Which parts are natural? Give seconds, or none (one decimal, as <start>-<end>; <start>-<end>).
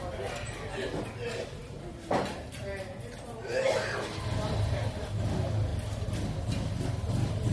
0.0-7.5